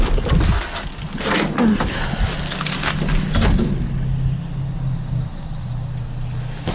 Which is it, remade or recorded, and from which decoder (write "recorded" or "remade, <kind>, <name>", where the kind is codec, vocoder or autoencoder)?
recorded